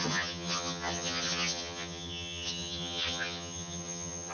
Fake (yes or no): yes